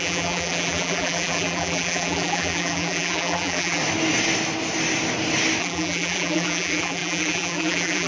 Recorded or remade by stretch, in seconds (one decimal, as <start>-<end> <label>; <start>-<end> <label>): 0.0-3.8 remade; 3.8-5.6 recorded; 5.6-8.1 remade